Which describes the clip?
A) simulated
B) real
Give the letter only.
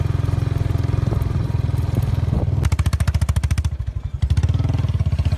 B